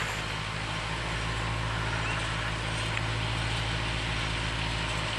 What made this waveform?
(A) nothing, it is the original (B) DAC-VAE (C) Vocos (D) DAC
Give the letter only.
A